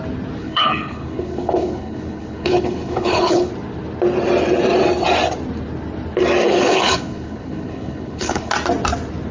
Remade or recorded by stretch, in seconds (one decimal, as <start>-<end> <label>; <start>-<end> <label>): 0.0-0.4 recorded; 0.4-3.5 remade; 3.5-6.4 recorded; 6.4-8.5 remade; 8.5-9.3 recorded